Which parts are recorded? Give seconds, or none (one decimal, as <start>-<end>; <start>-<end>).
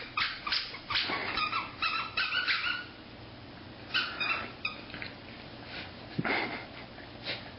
0.0-7.6